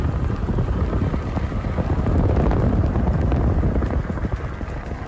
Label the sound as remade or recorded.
recorded